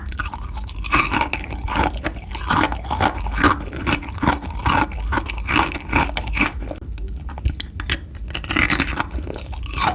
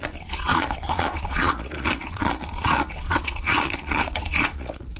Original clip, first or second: first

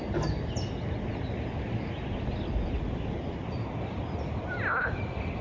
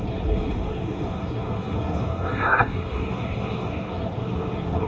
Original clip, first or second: first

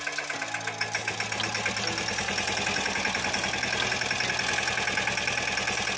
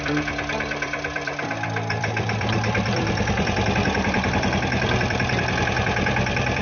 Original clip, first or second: first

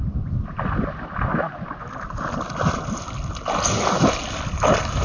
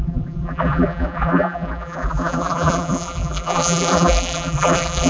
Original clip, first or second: first